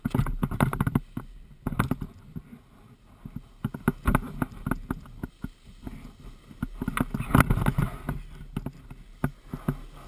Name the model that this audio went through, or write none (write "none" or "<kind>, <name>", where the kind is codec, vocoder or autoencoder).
none